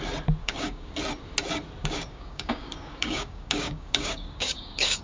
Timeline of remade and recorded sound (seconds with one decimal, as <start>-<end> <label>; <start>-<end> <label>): 0.0-0.4 recorded; 0.4-0.9 remade; 0.9-1.8 recorded; 1.8-5.0 remade